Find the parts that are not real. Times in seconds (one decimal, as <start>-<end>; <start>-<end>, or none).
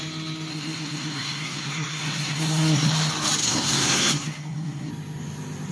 0.5-2.9; 3.4-4.9